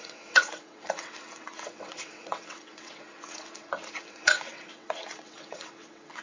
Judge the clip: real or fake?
fake